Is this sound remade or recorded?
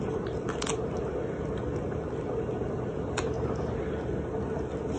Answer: recorded